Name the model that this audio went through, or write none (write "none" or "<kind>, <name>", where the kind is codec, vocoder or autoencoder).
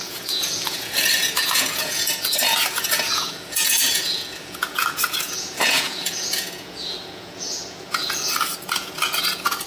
vocoder, Vocos